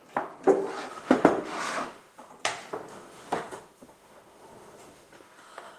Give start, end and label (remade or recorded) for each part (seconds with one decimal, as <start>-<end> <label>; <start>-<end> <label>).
0.0-0.9 recorded; 0.9-2.3 remade; 2.3-2.9 recorded; 2.9-5.8 remade